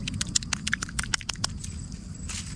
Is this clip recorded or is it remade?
recorded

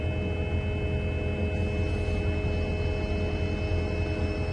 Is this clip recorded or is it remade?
recorded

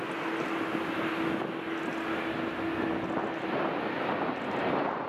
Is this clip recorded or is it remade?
recorded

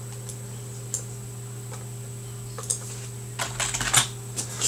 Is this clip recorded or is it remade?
recorded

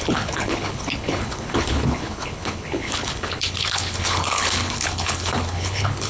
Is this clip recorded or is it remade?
remade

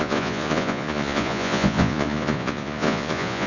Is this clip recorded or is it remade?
remade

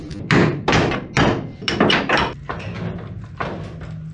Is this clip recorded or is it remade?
recorded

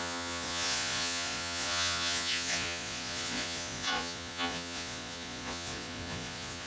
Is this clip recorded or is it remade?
remade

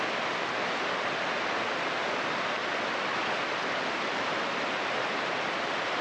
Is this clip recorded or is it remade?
recorded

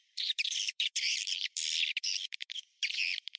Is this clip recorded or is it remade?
remade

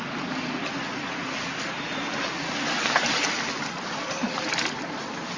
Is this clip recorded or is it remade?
recorded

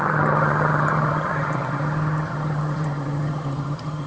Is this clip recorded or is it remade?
remade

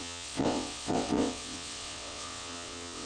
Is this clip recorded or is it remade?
remade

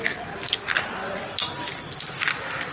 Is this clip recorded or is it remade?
recorded